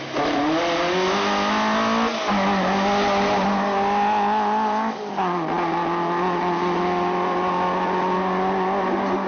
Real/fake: real